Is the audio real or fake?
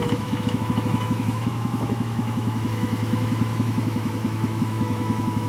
fake